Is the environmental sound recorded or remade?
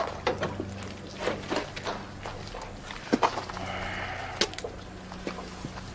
recorded